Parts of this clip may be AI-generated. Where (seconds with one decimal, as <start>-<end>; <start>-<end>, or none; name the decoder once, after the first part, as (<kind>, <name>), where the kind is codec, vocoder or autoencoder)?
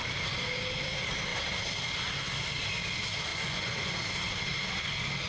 3.3-3.9 (vocoder, Vocos)